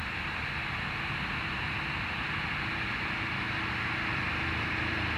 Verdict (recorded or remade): recorded